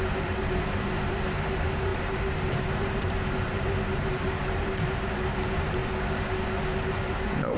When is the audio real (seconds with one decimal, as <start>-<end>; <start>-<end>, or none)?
5.8-6.9